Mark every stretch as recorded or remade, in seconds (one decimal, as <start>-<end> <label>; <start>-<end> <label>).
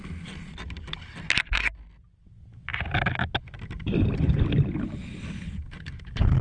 0.0-6.4 recorded